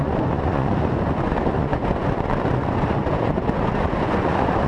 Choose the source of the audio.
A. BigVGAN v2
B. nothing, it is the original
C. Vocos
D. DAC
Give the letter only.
C